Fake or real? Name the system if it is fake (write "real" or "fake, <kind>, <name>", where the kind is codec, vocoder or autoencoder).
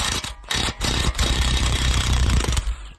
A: fake, vocoder, Vocos